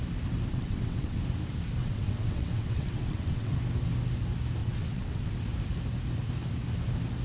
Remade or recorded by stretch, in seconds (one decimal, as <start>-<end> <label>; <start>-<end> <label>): 0.0-0.5 recorded; 0.5-1.2 remade; 1.2-1.8 recorded; 1.8-3.6 remade; 3.6-4.6 recorded; 4.6-5.3 remade; 5.3-7.2 recorded